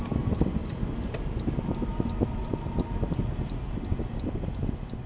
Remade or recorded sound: recorded